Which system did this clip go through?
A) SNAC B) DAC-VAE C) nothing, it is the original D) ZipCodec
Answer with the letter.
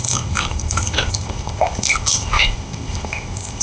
D